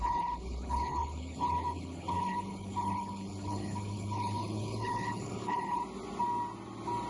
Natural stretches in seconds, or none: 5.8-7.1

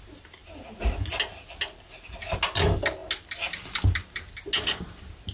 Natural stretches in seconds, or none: 0.0-5.3